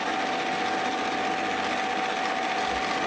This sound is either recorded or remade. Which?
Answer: recorded